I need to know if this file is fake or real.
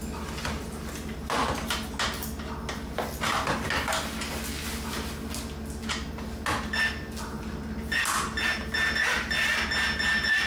real